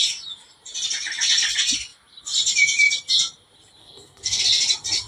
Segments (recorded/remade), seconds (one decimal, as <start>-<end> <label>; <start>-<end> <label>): 0.0-3.8 recorded; 3.8-4.4 remade; 4.4-5.1 recorded